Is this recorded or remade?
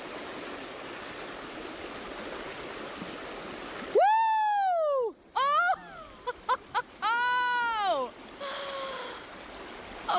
recorded